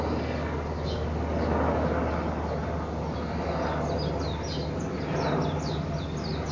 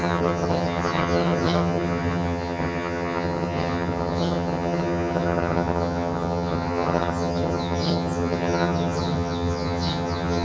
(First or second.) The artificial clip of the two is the second